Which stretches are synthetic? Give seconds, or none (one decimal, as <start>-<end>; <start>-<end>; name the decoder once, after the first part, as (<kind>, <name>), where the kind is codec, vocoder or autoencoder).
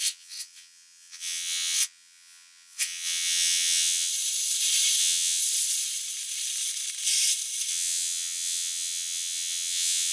0.0-4.1 (vocoder, WaveNeXt); 5.0-5.4; 7.7-10.1